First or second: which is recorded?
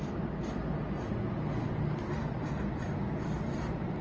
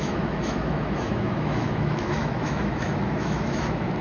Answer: first